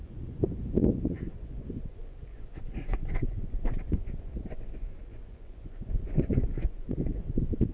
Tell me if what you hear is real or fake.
fake